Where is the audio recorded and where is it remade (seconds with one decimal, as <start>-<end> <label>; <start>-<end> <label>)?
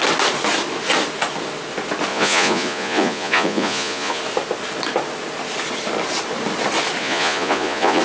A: 0.0-2.1 recorded; 2.1-4.2 remade; 4.2-7.0 recorded; 7.0-8.0 remade